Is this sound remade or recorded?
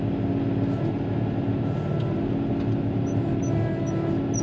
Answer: recorded